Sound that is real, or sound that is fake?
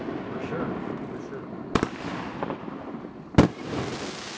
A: real